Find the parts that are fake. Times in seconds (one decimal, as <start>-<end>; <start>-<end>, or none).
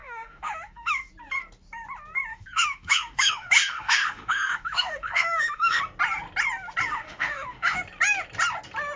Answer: 0.0-1.1; 2.3-5.8; 6.9-7.8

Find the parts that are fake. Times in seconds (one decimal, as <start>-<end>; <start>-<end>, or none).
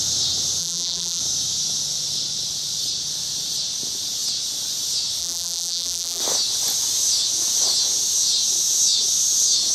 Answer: 0.6-1.2; 5.2-6.2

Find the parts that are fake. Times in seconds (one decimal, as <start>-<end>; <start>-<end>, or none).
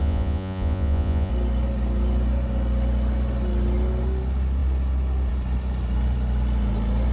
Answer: 0.0-1.3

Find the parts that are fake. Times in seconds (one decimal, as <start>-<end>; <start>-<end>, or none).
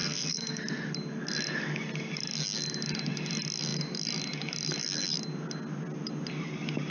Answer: 0.0-0.6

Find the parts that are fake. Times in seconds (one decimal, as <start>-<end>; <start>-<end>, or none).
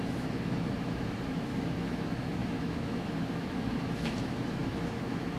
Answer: 0.0-5.4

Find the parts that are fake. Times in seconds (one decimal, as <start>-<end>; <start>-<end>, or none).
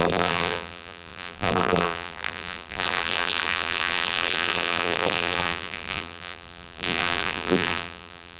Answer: 0.0-8.4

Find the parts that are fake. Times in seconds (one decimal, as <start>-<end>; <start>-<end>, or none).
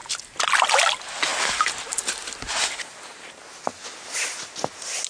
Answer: none